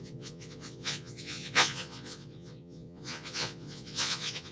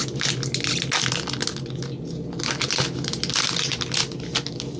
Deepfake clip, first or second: first